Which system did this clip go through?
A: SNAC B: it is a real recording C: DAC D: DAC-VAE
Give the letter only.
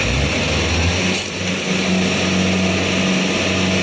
B